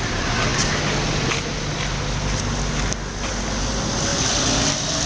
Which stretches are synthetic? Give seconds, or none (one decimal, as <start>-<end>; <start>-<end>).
4.1-5.1